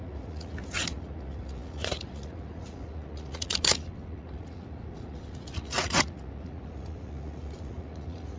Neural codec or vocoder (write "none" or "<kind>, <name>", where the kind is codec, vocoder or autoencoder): vocoder, Vocos